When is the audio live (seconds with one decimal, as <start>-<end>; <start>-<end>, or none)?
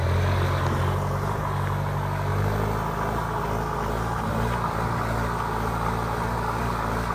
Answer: 0.0-7.1